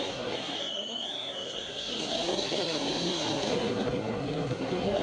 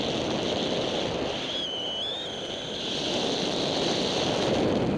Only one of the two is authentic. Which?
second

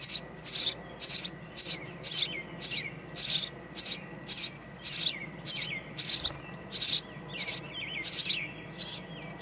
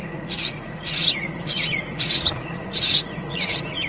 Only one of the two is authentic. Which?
first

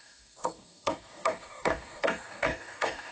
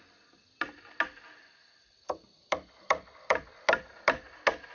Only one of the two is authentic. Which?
second